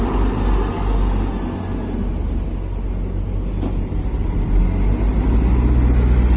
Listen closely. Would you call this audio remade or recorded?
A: recorded